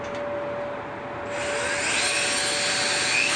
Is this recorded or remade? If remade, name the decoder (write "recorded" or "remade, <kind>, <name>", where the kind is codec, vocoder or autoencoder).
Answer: recorded